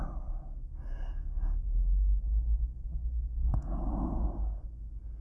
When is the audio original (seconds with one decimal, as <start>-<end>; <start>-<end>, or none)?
0.0-3.5; 4.3-5.2